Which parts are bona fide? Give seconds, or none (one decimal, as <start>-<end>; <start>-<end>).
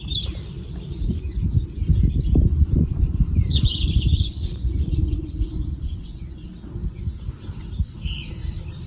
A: 0.0-2.4; 6.2-8.9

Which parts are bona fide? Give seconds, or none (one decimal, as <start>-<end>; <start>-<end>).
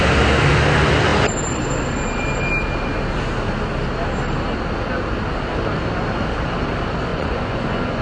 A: 0.0-7.1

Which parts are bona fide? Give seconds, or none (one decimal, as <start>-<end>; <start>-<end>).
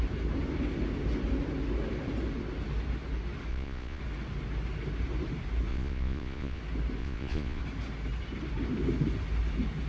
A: 0.0-3.5; 4.0-5.7; 6.6-7.0; 7.6-9.9